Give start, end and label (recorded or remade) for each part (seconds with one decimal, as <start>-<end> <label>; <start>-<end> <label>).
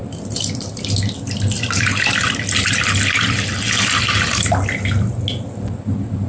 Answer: 0.0-6.3 recorded